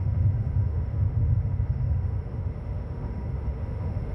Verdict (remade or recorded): remade